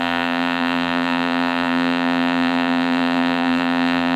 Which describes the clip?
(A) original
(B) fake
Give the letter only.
B